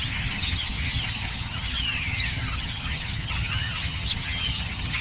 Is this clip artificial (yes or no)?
yes